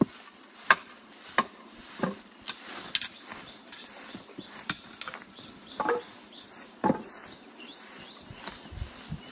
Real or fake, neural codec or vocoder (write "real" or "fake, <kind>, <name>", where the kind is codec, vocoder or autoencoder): real